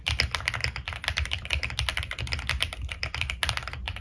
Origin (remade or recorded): recorded